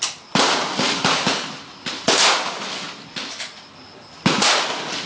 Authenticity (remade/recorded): recorded